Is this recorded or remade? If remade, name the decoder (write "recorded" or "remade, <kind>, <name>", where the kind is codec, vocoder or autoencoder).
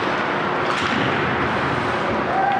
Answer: recorded